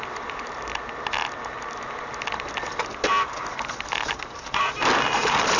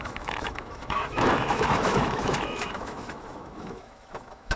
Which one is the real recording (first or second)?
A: first